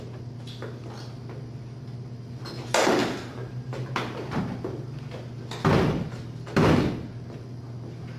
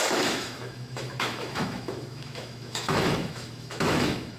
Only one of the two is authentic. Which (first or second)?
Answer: first